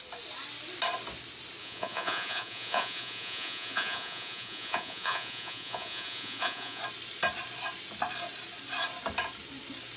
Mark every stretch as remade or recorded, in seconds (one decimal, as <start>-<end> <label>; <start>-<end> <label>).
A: 0.0-1.6 recorded; 1.6-6.8 remade; 6.8-10.0 recorded